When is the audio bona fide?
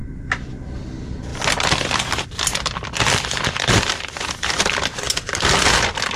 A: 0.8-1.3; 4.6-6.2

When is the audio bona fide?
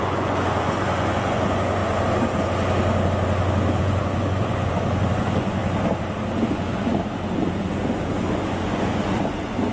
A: 1.8-3.8; 5.6-6.5; 6.9-7.4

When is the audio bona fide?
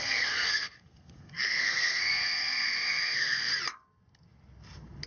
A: 3.5-5.1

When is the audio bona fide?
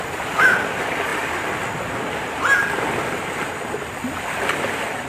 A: 0.0-5.1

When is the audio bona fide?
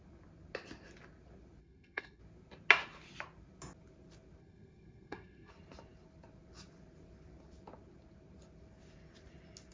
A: 0.0-1.6; 2.2-4.4; 5.5-9.7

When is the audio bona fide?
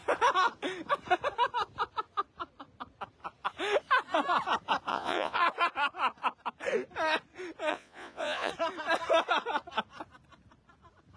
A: 0.0-4.9; 5.4-7.7; 8.5-11.2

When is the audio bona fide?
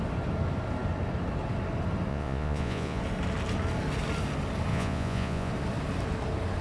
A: 0.0-2.1; 3.0-4.7; 5.5-6.6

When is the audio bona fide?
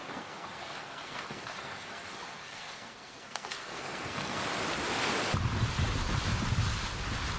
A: 4.4-7.4